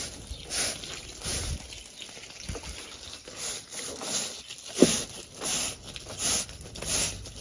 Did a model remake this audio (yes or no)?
no